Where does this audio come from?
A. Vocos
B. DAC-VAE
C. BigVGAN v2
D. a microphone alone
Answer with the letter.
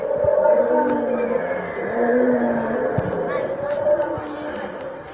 D